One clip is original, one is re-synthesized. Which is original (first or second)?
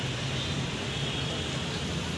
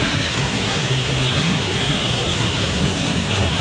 first